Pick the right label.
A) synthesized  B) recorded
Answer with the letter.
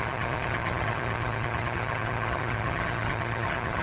A